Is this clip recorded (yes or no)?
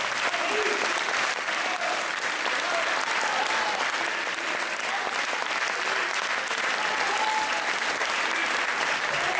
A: yes